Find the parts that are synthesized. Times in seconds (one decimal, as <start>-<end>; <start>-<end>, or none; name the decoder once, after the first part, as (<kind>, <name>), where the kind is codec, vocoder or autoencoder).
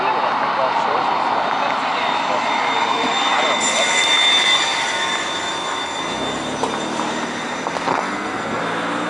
7.9-8.6 (codec, SNAC)